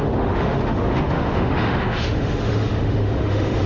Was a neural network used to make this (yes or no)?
yes